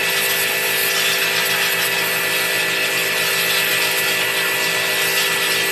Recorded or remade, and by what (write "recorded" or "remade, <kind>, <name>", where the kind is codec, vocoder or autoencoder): recorded